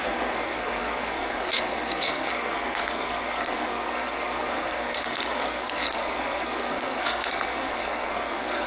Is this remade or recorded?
remade